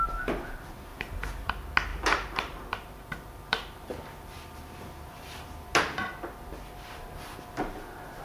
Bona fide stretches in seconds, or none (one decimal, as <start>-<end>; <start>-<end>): 0.0-0.9; 1.5-1.9; 5.6-8.2